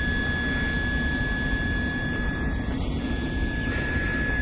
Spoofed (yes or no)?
no